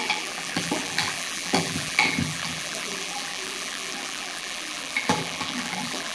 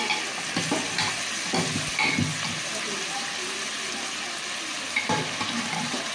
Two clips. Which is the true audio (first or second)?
second